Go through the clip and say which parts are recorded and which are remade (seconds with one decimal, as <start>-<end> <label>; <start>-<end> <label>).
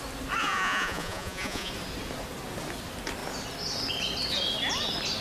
0.0-0.4 recorded; 0.4-1.7 remade; 1.7-5.2 recorded